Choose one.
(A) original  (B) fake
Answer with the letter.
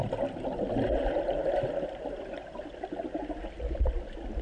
A